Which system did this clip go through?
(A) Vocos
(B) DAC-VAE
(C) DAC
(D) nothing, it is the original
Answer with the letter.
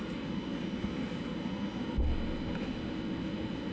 D